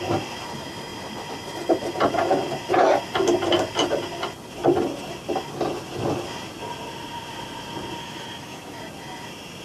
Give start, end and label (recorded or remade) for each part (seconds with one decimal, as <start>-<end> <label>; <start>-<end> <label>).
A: 0.0-8.0 recorded; 8.0-8.8 remade; 8.8-9.6 recorded